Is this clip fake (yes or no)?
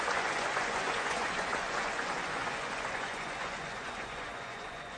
yes